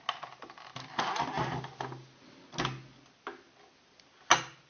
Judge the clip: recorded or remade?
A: recorded